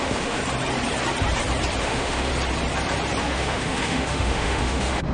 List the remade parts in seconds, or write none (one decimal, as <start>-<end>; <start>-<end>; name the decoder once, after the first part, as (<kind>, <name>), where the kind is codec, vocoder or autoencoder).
0.0-0.4 (autoencoder, DAC-VAE); 1.8-2.3; 3.2-5.1